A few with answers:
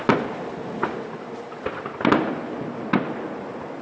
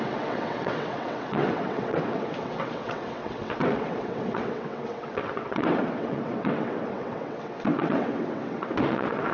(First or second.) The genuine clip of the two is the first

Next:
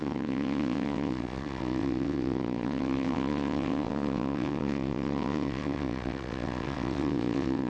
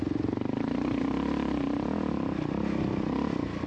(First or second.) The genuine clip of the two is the second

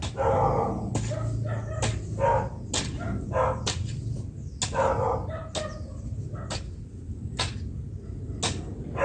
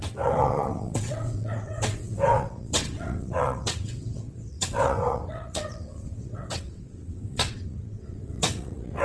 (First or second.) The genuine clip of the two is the first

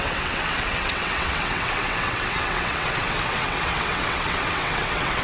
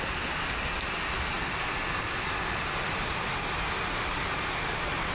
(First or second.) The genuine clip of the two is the second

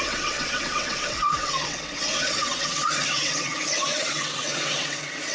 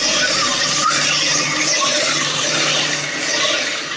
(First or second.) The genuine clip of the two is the second